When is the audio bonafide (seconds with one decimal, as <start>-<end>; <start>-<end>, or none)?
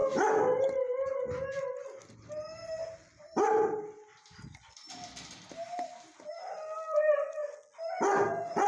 0.0-8.7